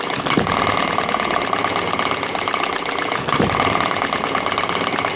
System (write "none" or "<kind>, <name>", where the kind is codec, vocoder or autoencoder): none